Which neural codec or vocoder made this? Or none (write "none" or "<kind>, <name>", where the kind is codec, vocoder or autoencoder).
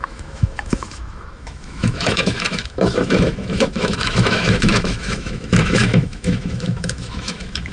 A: autoencoder, DAC-VAE